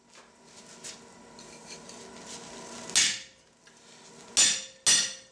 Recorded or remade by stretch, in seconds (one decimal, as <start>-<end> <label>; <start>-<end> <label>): 0.0-5.3 recorded